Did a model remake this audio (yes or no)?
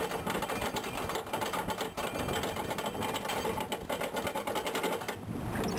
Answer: no